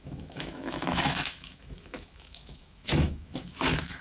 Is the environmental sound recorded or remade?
remade